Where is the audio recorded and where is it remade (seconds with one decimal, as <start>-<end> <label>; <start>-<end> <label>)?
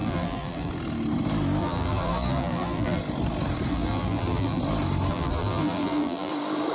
0.0-0.7 remade; 0.7-1.6 recorded; 1.6-3.0 remade; 3.0-3.7 recorded; 3.7-4.6 remade; 4.6-5.1 recorded; 5.1-6.3 remade; 6.3-6.7 recorded